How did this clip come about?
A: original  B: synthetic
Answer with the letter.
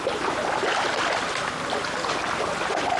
A